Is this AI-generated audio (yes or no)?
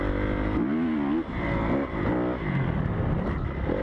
no